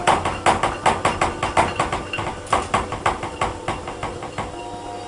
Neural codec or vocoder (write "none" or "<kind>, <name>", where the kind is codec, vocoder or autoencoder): none